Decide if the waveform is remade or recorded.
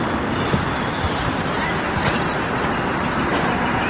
recorded